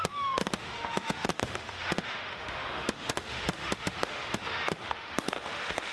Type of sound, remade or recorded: remade